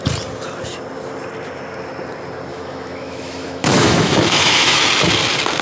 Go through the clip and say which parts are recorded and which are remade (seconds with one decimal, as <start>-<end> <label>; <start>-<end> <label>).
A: 0.0-2.5 recorded; 2.5-4.9 remade; 4.9-5.6 recorded